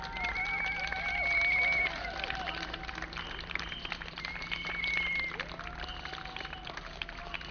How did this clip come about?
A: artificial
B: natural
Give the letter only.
B